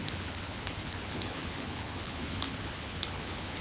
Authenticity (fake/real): fake